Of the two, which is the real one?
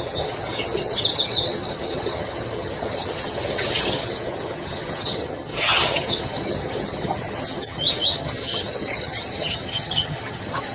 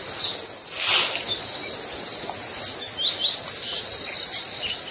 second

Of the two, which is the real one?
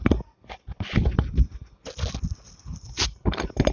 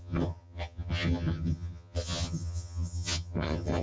first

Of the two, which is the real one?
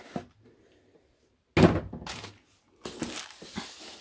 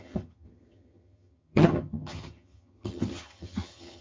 first